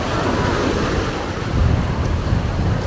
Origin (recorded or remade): recorded